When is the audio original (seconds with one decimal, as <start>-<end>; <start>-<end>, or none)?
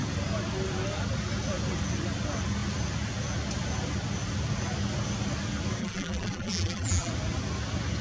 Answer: 0.0-5.8; 7.1-8.0